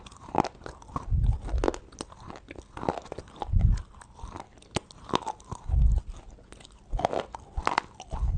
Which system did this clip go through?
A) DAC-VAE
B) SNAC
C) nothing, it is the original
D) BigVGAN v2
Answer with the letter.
C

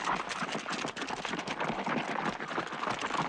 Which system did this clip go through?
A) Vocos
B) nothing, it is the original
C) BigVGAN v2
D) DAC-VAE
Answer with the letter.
B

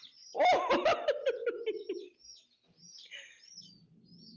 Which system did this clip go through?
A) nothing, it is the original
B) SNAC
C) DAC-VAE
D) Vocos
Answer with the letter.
A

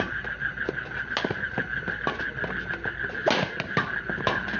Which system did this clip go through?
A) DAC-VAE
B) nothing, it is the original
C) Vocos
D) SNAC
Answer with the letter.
B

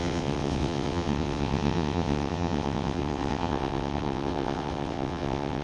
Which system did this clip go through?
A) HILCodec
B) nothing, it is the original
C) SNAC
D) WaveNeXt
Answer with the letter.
D